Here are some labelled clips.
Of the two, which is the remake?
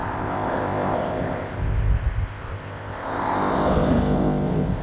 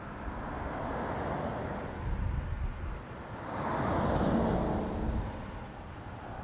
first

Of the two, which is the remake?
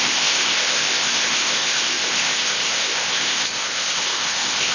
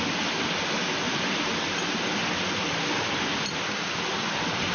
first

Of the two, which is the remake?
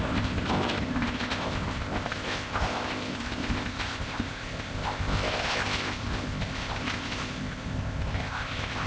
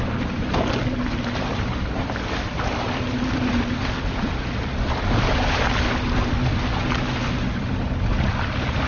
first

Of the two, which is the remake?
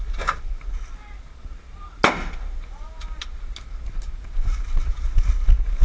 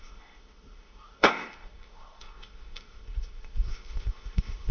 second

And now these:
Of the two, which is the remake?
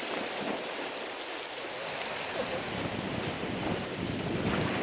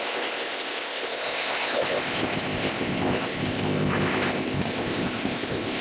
second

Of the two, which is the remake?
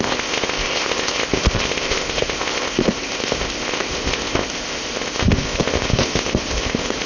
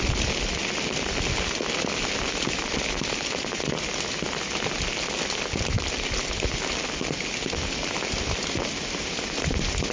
first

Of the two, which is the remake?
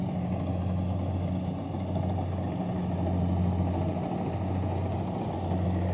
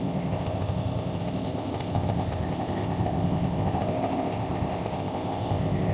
second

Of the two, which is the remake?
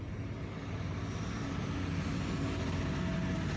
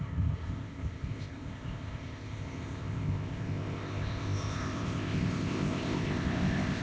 second